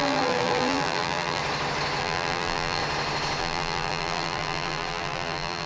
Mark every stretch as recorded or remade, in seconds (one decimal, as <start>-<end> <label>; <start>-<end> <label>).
0.0-1.4 remade; 1.4-2.0 recorded; 2.0-2.8 remade; 2.8-3.4 recorded; 3.4-5.7 remade